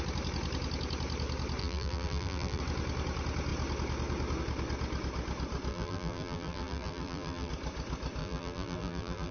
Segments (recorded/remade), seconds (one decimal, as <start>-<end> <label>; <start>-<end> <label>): 0.0-1.6 recorded; 1.6-2.6 remade; 2.6-5.7 recorded; 5.7-7.5 remade; 7.5-8.2 recorded; 8.2-9.3 remade